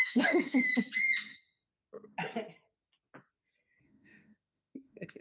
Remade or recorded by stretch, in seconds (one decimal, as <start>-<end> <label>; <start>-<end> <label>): 0.0-0.7 remade; 0.7-3.8 recorded; 3.8-5.2 remade